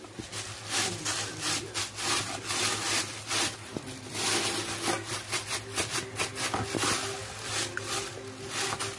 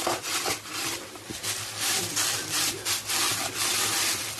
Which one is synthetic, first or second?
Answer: second